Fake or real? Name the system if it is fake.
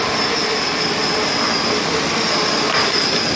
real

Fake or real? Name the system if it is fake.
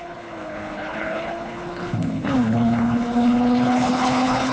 fake, codec, HILCodec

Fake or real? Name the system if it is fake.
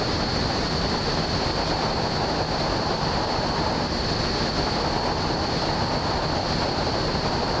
real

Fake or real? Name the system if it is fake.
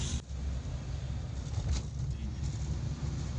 real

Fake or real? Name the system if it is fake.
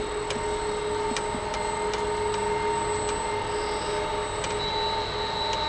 real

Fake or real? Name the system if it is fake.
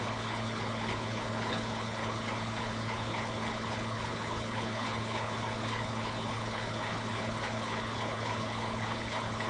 fake, codec, HILCodec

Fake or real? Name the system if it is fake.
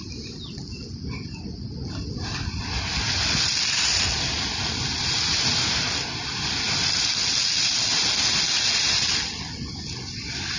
real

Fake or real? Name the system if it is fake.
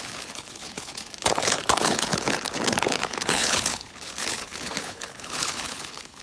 fake, codec, HILCodec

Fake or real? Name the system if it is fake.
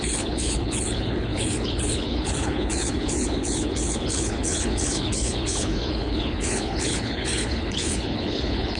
fake, codec, HILCodec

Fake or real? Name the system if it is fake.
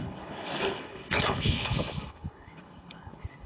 fake, codec, HILCodec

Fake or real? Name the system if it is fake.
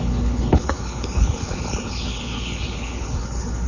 fake, codec, HILCodec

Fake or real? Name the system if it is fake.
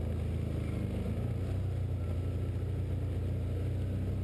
real